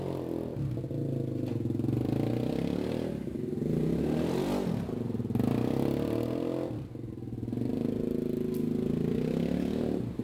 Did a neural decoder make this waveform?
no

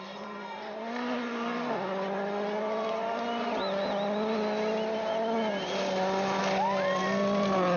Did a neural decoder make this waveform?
no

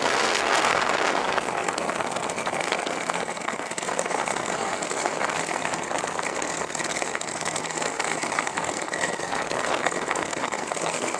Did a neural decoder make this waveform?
yes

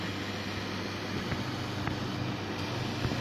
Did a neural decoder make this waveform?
no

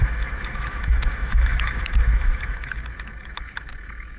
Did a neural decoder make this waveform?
yes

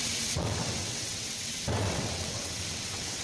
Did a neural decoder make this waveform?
yes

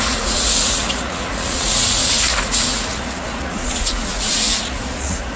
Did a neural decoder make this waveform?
yes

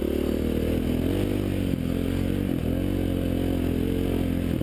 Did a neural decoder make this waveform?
no